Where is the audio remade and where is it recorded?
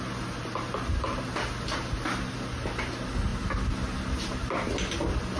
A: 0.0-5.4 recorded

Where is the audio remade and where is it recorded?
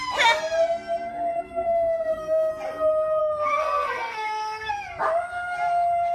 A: 0.0-1.1 recorded; 1.1-2.5 remade; 2.5-3.2 recorded; 3.2-4.7 remade; 4.7-6.1 recorded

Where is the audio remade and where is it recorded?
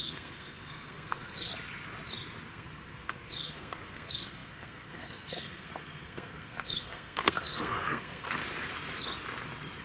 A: 0.0-1.5 remade; 1.5-2.5 recorded; 2.5-8.4 remade; 8.4-9.8 recorded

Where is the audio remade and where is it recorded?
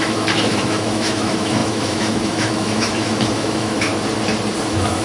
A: 0.0-3.9 remade; 3.9-4.6 recorded; 4.6-5.0 remade